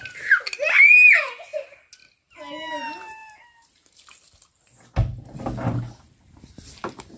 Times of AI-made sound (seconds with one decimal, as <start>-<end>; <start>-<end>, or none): none